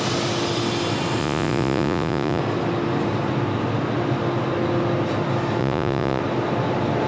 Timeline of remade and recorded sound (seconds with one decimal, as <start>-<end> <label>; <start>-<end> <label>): 0.0-1.2 recorded; 1.2-2.4 remade; 2.4-5.6 recorded; 5.6-6.2 remade; 6.2-7.1 recorded

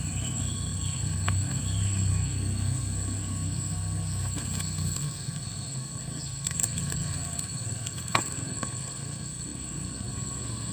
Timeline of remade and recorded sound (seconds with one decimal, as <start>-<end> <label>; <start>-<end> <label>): 0.0-10.7 remade

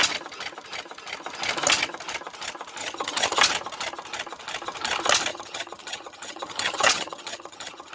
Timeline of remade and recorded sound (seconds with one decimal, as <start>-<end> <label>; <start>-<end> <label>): 0.0-2.8 recorded; 2.8-3.4 remade; 3.4-5.3 recorded; 5.3-7.9 remade

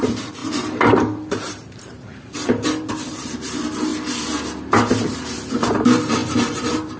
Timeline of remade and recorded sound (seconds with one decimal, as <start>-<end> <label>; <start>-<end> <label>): 0.0-3.9 remade; 3.9-5.1 recorded; 5.1-7.0 remade

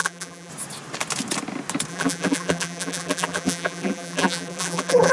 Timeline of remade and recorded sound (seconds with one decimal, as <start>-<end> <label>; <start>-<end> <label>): 0.0-0.5 remade; 0.5-1.9 recorded; 1.9-5.1 remade